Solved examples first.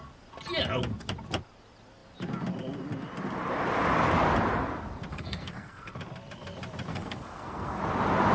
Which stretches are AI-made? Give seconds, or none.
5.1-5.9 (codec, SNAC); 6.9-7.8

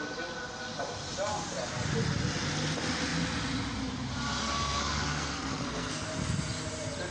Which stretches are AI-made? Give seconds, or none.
4.4-6.1 (codec, SNAC)

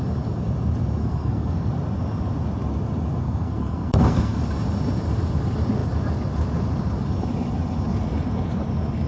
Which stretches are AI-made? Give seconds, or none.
1.0-1.7 (codec, SNAC); 3.2-4.4

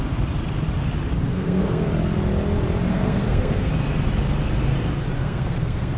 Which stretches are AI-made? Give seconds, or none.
1.3-1.9 (codec, SNAC); 2.9-3.7; 5.2-6.0

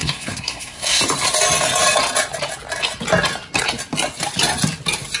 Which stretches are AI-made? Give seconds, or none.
0.0-1.0 (codec, SNAC)